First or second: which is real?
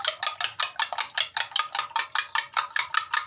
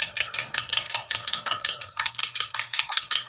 first